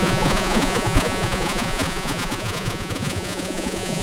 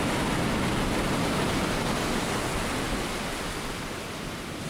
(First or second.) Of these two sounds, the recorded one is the second